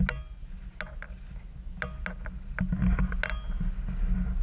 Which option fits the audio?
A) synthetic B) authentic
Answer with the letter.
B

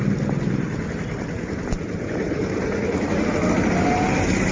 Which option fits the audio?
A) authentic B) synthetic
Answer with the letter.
A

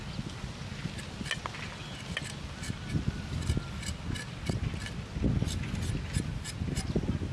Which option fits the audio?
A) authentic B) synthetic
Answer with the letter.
A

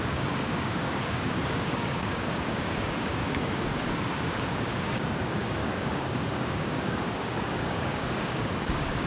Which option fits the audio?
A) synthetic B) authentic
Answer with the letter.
A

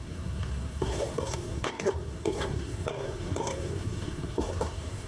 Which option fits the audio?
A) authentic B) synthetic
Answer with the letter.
B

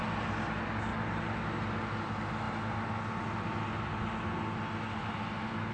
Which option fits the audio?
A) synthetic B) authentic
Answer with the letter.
B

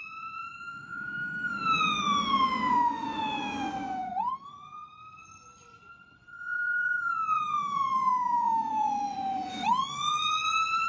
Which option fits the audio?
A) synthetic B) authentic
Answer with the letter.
A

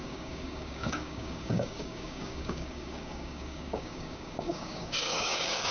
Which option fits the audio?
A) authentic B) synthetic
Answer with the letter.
B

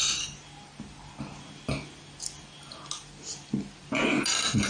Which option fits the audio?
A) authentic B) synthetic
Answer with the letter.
A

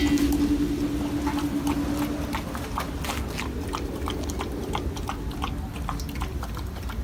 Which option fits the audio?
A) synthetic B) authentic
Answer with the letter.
B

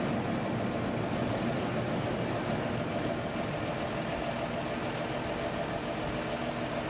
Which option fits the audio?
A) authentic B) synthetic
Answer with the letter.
A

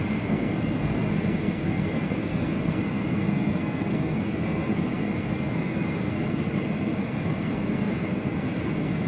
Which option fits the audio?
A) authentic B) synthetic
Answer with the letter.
B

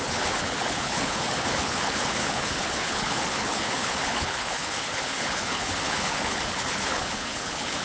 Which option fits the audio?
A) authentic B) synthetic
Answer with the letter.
B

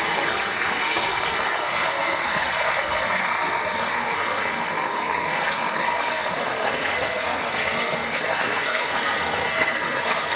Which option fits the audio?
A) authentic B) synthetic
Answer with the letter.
B